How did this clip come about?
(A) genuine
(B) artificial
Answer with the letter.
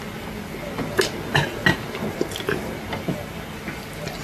A